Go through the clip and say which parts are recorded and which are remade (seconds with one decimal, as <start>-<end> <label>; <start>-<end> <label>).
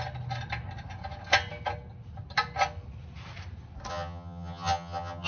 0.0-3.9 recorded; 3.9-5.3 remade